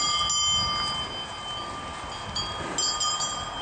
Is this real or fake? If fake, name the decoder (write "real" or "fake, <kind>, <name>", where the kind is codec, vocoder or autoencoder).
real